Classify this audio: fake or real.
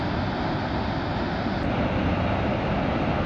real